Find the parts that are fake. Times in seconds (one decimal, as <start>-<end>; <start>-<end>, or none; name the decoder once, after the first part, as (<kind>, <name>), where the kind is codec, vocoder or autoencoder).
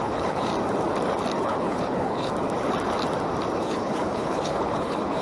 0.0-0.5 (codec, HILCodec); 1.4-2.3; 3.6-5.2